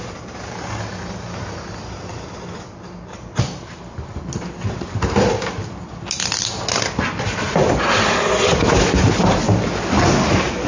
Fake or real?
real